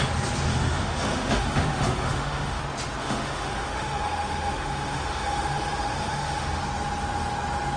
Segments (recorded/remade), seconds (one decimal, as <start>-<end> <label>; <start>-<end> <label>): 0.0-0.5 recorded; 0.5-2.6 remade; 2.6-3.0 recorded; 3.0-6.6 remade; 6.6-7.8 recorded